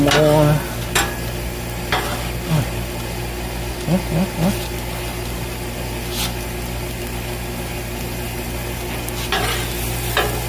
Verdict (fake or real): real